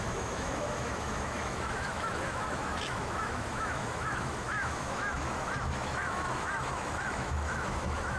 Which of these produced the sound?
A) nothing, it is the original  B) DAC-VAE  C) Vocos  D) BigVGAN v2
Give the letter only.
B